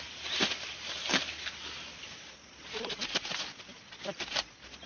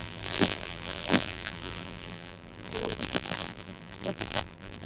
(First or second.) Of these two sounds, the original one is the first